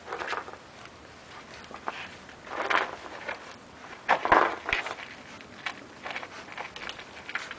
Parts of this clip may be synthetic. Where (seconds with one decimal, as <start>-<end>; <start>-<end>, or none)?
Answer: 1.2-2.1